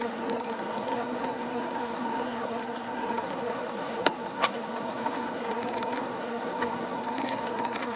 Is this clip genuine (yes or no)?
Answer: no